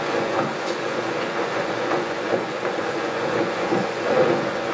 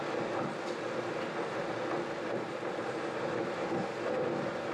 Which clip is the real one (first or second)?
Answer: second